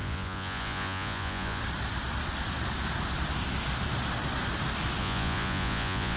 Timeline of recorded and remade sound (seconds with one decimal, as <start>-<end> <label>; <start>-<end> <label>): 0.0-1.6 remade; 1.6-5.0 recorded; 5.0-6.2 remade